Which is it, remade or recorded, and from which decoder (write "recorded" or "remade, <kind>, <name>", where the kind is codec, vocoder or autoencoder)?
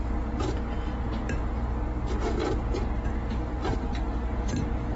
recorded